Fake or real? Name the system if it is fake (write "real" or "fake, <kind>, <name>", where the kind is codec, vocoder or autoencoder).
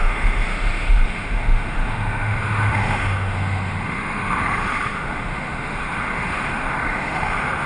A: fake, autoencoder, DAC-VAE